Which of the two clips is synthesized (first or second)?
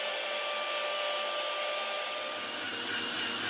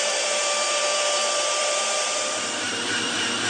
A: second